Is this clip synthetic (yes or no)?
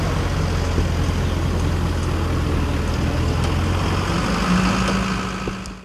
no